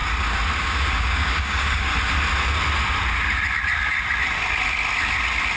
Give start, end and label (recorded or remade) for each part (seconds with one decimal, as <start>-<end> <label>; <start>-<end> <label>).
0.0-0.6 recorded; 0.6-1.9 remade; 1.9-5.6 recorded